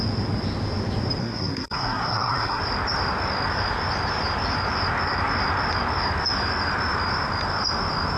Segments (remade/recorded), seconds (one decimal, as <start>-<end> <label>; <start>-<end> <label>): 0.0-1.2 recorded; 1.2-2.6 remade; 2.6-8.2 recorded